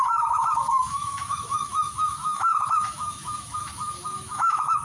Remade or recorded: remade